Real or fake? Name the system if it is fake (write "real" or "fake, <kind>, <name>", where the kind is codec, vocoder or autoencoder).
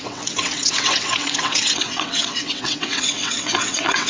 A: fake, vocoder, WaveNeXt